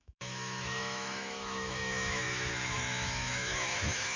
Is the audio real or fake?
fake